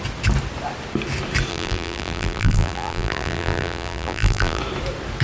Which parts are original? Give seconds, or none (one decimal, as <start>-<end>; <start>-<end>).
0.0-1.5; 4.6-5.2